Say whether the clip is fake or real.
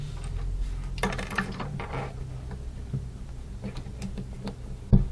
real